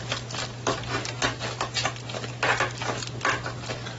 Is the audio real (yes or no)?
yes